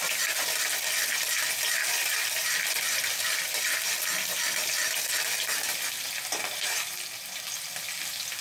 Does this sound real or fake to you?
real